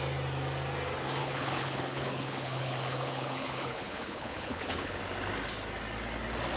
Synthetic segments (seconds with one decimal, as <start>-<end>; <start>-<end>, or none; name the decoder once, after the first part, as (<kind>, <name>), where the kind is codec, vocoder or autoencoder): 1.2-5.0 (codec, HILCodec)